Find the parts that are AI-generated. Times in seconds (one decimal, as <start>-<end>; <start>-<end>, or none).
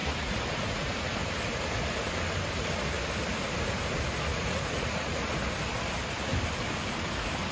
0.0-1.1; 1.5-2.1; 4.3-5.2